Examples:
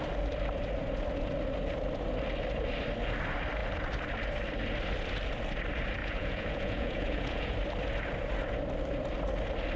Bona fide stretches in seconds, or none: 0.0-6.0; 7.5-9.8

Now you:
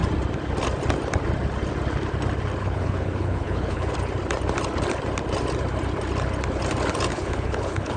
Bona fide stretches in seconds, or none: 0.0-2.6; 3.9-7.1

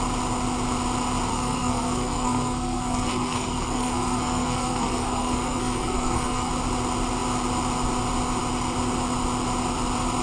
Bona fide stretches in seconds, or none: 0.0-1.3; 6.5-10.2

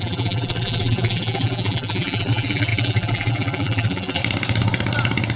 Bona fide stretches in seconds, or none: 4.2-5.4

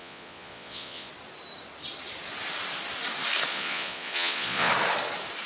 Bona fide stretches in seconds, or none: 1.1-3.5; 4.7-5.5

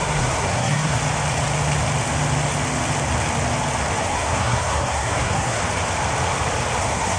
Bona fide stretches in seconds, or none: 1.0-4.0; 5.6-6.8